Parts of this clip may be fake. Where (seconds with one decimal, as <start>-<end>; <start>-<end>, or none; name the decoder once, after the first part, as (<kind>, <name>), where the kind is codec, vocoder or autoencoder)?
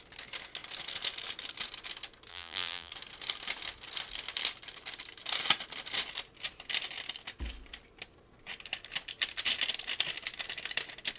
2.3-2.9 (vocoder, BigVGAN v2)